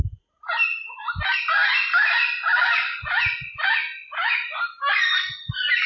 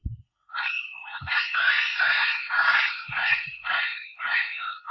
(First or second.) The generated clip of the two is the second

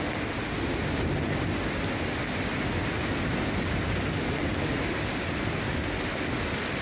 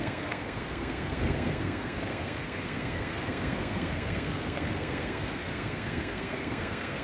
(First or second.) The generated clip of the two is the second